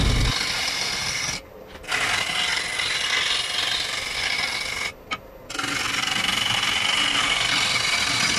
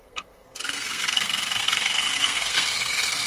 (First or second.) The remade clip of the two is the second